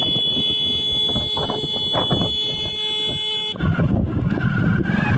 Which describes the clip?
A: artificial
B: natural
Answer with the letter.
B